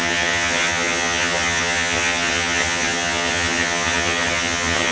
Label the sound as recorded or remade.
remade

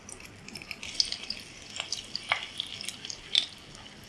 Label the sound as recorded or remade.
recorded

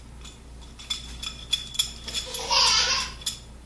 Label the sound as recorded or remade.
recorded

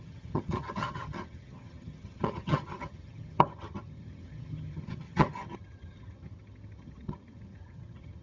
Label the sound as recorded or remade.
remade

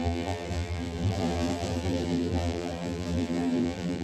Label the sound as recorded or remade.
remade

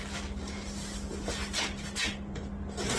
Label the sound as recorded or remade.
recorded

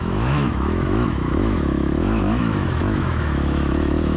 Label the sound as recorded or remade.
remade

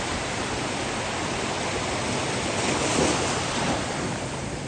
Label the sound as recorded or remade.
remade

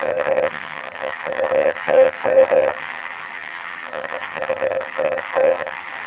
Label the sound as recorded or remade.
remade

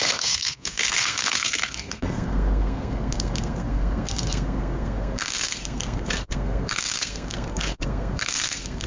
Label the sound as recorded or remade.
remade